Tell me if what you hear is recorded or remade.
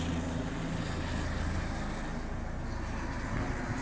recorded